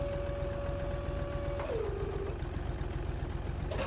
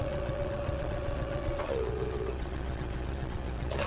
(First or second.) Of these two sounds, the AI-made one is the second